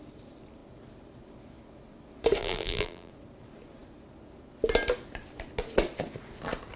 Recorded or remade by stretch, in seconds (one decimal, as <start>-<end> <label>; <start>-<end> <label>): 0.0-2.4 recorded; 2.4-3.1 remade; 3.1-6.8 recorded